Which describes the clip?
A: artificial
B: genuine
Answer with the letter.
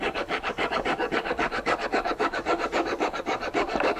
A